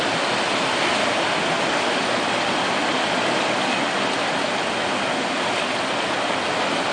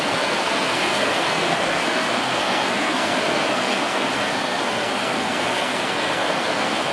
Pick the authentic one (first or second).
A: first